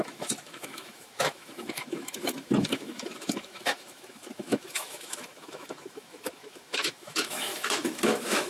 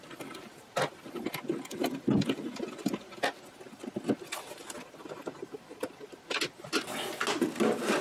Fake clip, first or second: first